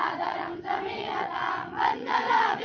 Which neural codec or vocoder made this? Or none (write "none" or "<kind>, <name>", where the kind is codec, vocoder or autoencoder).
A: vocoder, WaveNeXt